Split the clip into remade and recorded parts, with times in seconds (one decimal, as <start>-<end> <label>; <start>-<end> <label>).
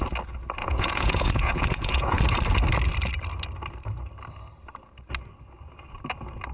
0.0-0.6 recorded; 0.6-2.2 remade; 2.2-6.5 recorded